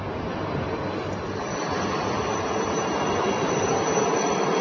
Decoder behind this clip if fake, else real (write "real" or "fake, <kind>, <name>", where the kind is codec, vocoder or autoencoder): real